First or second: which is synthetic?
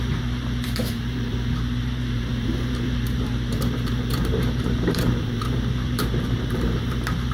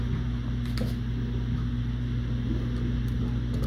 first